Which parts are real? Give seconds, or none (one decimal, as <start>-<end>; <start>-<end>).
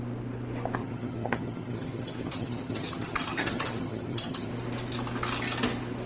0.0-0.8; 4.5-6.1